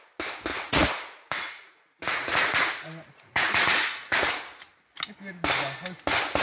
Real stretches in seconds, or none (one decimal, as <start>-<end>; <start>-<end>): 0.0-0.5; 4.3-6.4